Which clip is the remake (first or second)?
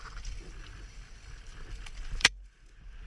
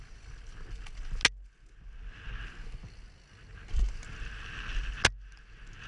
first